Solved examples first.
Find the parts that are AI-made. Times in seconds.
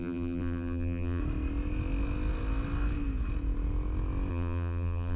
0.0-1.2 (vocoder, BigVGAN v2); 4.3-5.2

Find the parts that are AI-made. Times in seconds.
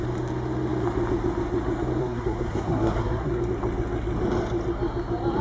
2.0-3.4 (codec, SNAC)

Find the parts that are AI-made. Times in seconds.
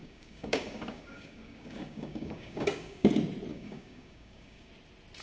0.0-3.1 (codec, DAC); 3.5-4.7